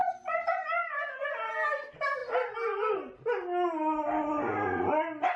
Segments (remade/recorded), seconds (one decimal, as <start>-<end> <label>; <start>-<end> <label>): 0.0-1.5 remade; 1.5-5.4 recorded